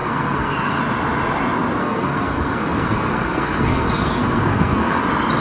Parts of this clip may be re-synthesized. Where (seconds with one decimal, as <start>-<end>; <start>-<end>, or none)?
0.0-0.8; 1.8-5.0